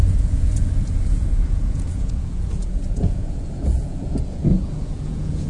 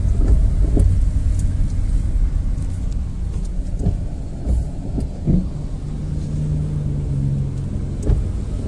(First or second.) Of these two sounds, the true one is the second